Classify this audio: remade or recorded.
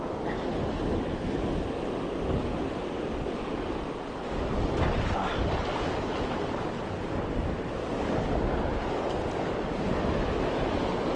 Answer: recorded